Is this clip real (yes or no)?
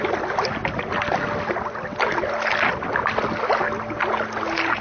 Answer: yes